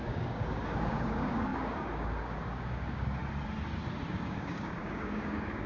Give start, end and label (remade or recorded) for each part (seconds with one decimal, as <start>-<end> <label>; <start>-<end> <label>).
0.0-3.2 remade; 3.2-4.1 recorded; 4.1-5.7 remade